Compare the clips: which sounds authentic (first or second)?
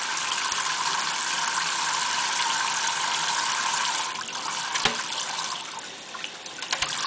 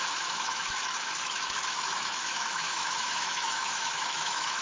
first